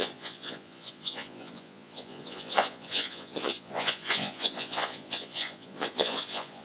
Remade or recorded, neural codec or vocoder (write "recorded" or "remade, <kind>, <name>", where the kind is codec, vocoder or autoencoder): remade, vocoder, Vocos